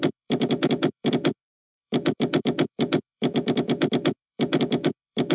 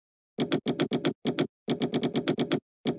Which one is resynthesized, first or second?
first